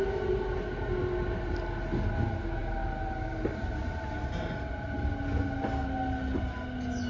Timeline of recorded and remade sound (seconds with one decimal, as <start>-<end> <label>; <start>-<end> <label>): 0.0-7.1 recorded